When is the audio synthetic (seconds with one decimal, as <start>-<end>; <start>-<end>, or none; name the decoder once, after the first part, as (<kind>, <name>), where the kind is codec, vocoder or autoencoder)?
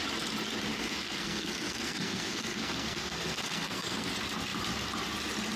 0.7-4.1 (codec, SNAC)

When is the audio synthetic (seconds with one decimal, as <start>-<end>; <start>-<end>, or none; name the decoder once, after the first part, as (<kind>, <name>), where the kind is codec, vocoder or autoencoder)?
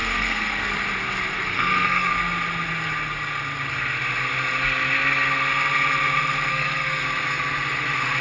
0.0-0.7 (codec, SNAC); 1.3-2.1; 6.5-7.0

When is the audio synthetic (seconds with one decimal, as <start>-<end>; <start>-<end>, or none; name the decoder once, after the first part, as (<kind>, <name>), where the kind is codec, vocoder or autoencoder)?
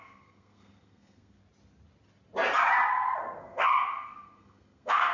0.0-1.4 (codec, SNAC); 3.4-5.1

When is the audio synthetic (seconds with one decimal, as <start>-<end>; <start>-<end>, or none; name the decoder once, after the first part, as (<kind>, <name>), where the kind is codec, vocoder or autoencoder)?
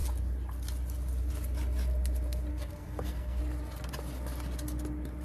2.5-3.4 (codec, SNAC)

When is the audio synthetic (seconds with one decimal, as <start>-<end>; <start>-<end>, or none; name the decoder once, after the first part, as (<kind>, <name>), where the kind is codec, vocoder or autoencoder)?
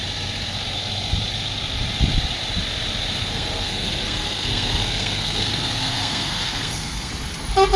3.2-7.1 (codec, SNAC)